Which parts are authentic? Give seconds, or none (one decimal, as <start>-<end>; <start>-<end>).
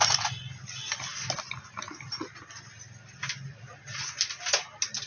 0.0-5.1